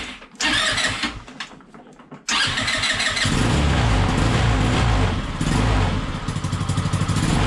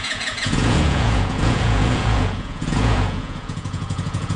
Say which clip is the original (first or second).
first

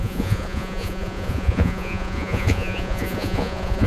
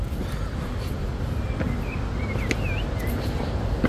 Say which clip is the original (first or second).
second